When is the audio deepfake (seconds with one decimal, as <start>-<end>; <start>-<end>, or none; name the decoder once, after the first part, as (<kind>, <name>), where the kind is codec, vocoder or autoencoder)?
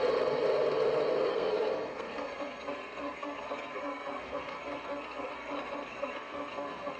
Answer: 1.3-5.5 (codec, SNAC); 5.9-7.0